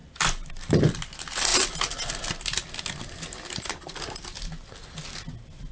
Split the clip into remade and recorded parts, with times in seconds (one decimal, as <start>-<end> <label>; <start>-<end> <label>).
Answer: 0.0-5.7 recorded